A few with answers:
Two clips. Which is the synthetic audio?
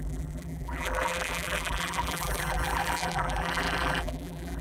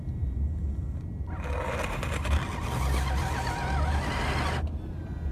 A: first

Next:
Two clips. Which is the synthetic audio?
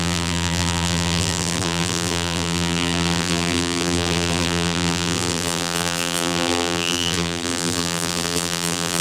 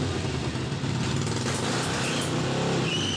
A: first